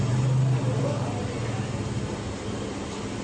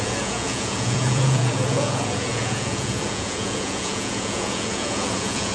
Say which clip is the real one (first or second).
first